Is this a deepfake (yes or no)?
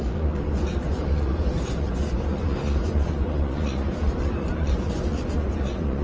yes